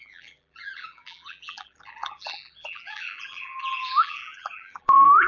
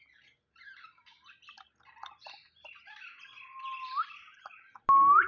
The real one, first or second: second